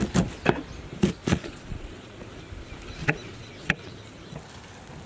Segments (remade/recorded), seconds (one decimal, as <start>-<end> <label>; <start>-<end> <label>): 0.0-1.2 recorded; 1.2-2.3 remade; 2.3-3.0 recorded; 3.0-4.0 remade; 4.0-5.1 recorded